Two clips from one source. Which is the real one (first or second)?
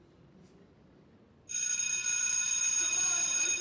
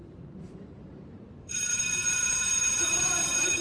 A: first